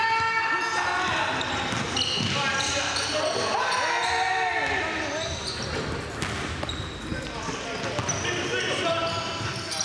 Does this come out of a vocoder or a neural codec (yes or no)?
no